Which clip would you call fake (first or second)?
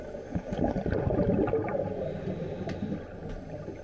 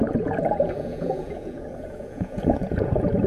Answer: second